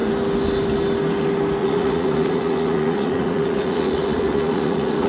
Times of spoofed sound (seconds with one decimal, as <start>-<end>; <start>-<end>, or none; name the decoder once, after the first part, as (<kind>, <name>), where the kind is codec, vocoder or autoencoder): 1.6-5.1 (vocoder, Vocos)